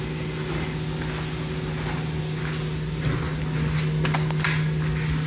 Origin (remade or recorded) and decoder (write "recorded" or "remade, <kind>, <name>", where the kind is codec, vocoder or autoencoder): recorded